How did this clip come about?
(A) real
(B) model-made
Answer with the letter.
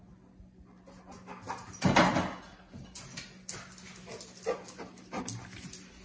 A